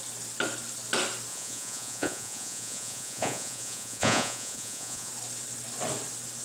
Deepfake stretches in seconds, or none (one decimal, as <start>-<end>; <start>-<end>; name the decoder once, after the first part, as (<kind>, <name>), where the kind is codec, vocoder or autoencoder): 1.3-5.1 (vocoder, Vocos)